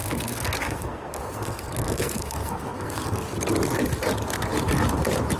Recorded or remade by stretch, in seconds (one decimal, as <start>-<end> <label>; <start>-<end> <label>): 0.0-3.2 remade; 3.2-5.4 recorded